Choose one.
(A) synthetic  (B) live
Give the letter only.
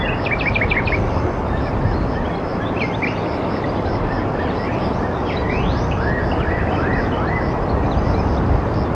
B